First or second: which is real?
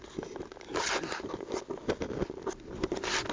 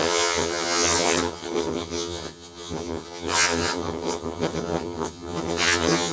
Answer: first